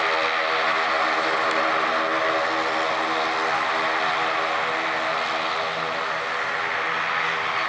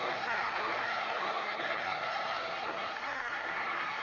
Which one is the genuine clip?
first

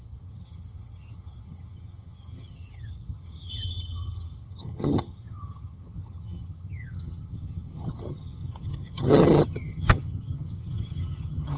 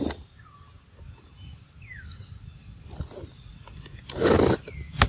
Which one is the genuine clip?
second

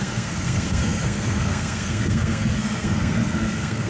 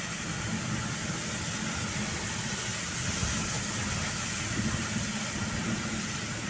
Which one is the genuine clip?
second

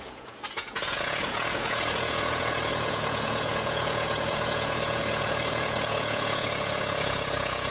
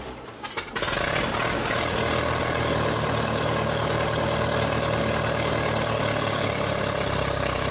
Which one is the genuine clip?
second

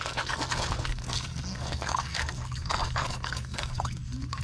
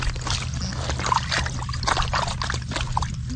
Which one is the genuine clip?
second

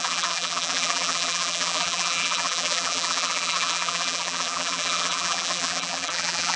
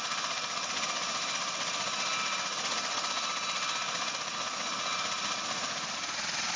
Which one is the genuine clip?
second